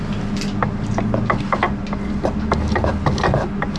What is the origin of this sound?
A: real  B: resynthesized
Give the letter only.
A